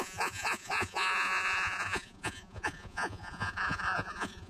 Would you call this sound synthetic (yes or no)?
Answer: yes